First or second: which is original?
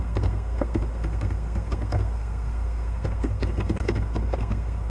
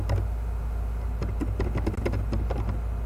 second